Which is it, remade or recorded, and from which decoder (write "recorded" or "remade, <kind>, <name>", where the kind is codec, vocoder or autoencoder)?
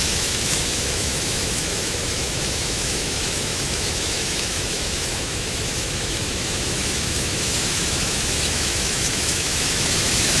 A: remade, autoencoder, DAC-VAE